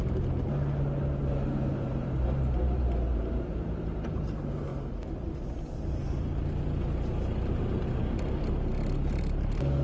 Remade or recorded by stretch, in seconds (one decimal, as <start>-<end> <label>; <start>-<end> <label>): 0.0-1.7 recorded; 1.7-3.8 remade; 3.8-9.8 recorded